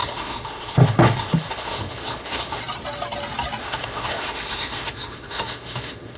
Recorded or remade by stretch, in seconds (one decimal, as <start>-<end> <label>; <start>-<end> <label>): 0.0-2.6 remade; 2.6-3.6 recorded; 3.6-6.2 remade